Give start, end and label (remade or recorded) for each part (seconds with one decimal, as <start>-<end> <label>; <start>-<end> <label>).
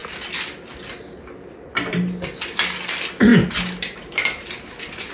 0.0-5.1 recorded